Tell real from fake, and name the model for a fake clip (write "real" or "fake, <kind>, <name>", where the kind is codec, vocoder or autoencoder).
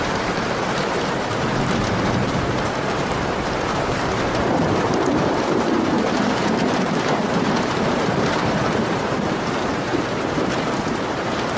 fake, vocoder, BigVGAN v2